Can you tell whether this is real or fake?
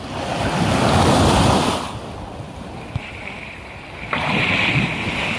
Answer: real